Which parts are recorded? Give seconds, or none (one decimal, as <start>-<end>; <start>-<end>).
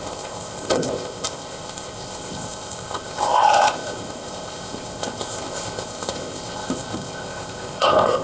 none